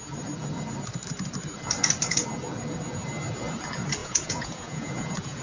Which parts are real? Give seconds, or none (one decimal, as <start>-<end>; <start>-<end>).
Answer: 0.0-4.0